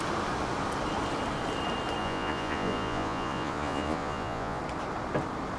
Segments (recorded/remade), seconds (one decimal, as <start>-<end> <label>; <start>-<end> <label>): 0.0-2.0 recorded; 2.0-4.6 remade; 4.6-5.6 recorded